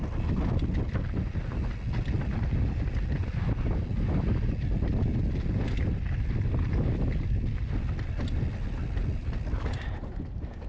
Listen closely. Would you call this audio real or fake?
real